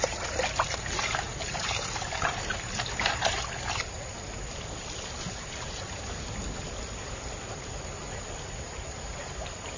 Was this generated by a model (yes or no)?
no